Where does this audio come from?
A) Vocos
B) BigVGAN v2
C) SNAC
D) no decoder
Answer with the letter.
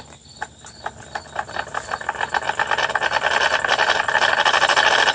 D